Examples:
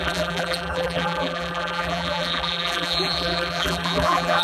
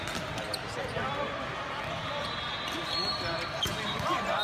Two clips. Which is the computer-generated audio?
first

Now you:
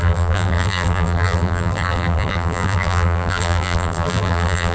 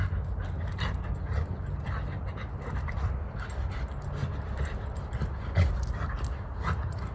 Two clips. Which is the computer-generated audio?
first